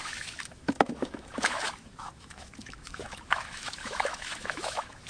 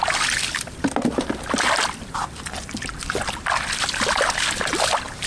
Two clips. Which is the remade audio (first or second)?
first